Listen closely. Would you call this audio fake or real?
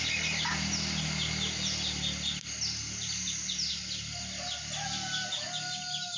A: real